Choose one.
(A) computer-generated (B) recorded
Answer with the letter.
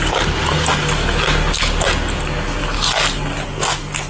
B